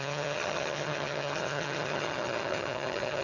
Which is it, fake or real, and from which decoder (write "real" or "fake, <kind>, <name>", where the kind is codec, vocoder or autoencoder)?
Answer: fake, vocoder, HiFi-GAN